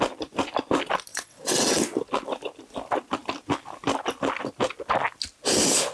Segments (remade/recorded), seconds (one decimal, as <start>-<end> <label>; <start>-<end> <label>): 0.0-1.1 recorded; 1.1-1.8 remade; 1.8-5.9 recorded